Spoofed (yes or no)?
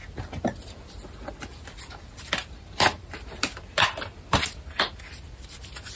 no